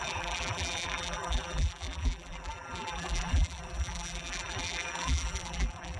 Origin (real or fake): fake